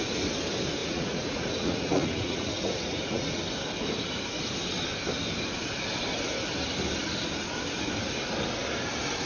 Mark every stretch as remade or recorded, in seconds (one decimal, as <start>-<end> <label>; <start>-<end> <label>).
0.0-0.8 recorded; 0.8-3.4 remade; 3.4-9.3 recorded